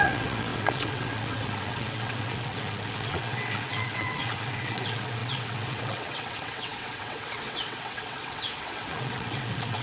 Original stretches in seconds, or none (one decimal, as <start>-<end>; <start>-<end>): none